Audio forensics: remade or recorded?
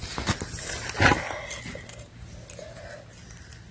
recorded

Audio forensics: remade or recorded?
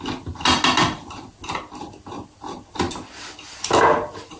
recorded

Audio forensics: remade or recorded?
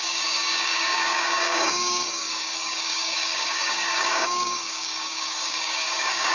remade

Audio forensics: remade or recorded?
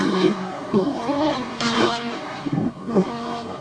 remade